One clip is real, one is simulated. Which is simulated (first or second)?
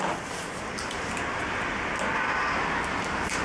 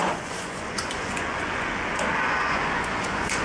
second